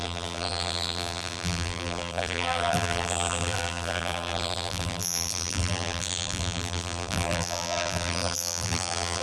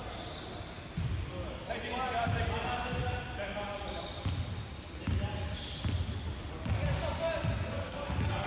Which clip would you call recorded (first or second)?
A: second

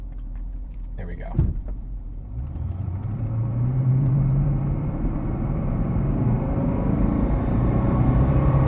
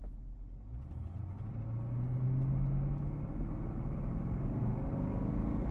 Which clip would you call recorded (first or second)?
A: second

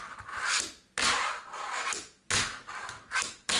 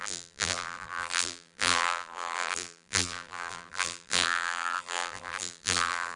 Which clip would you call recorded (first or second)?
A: first